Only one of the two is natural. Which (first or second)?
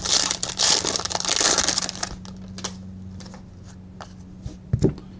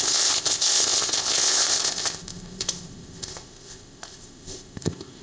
first